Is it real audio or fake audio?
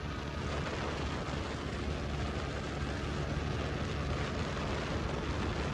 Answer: real